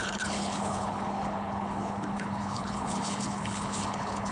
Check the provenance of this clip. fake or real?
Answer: fake